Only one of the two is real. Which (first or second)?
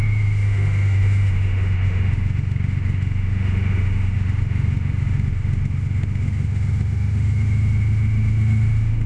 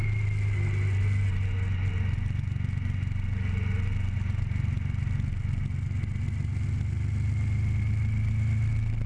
second